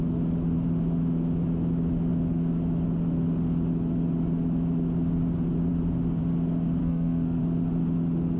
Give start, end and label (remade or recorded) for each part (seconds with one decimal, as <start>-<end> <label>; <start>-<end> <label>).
0.0-6.8 recorded; 6.8-7.4 remade; 7.4-8.4 recorded